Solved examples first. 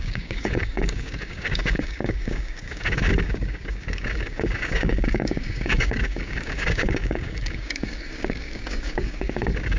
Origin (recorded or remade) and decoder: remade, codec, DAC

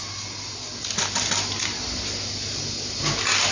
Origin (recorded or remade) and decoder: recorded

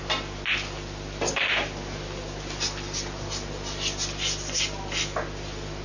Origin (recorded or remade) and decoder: recorded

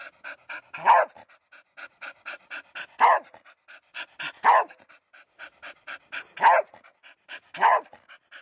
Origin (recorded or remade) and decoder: recorded